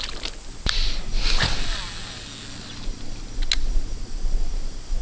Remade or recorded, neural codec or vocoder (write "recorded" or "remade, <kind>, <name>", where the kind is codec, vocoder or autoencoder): recorded